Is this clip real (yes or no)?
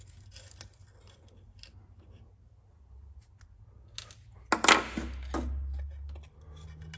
yes